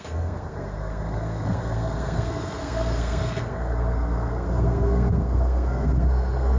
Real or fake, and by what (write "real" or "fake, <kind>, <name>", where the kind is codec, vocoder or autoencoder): fake, codec, SNAC